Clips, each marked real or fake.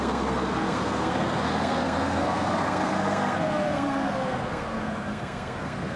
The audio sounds fake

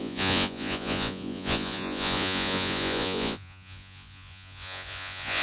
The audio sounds fake